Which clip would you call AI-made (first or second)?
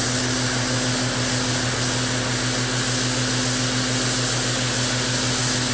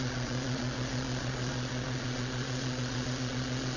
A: second